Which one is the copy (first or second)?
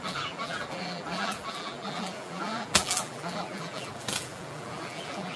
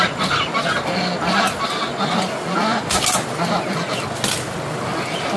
first